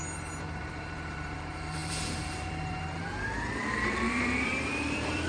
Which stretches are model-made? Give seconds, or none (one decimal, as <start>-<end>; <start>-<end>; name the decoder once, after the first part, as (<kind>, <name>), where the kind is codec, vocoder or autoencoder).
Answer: 0.6-5.3 (vocoder, BigVGAN v2)